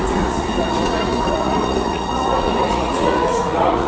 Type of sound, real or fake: fake